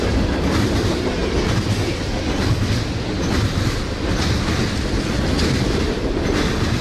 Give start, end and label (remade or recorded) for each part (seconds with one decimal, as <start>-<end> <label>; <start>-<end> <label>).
0.0-6.8 recorded